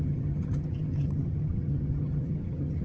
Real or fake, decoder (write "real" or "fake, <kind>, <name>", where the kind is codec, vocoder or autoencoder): fake, vocoder, HiFi-GAN